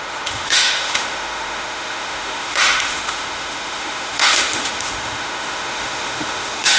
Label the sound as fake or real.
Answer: fake